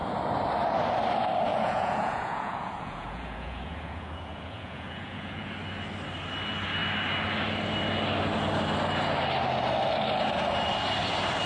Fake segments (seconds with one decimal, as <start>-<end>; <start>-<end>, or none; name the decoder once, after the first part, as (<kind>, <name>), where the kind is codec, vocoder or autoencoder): 1.5-5.5 (vocoder, Vocos)